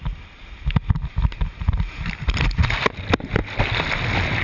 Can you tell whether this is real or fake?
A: real